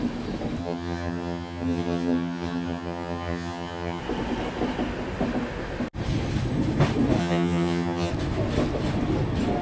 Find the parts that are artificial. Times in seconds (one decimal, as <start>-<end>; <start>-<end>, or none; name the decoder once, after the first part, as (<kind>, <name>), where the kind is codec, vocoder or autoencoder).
0.6-4.0 (vocoder, HiFi-GAN); 7.2-8.1